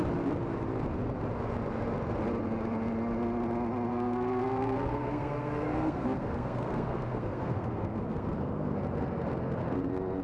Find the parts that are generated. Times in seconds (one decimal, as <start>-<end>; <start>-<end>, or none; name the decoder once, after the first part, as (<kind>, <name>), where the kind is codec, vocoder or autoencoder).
3.9-8.8 (codec, SNAC)